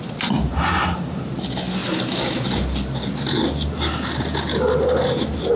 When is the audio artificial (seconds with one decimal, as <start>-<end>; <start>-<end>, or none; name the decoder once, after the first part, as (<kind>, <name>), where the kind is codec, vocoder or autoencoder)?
none